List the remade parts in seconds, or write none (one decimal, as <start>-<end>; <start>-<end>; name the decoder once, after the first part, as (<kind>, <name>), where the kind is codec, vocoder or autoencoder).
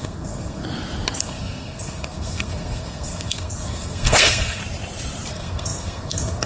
0.0-0.6 (codec, SNAC); 1.2-4.6; 5.3-6.5